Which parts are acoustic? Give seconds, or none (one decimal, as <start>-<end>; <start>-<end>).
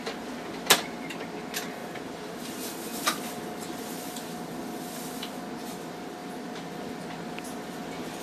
0.0-8.2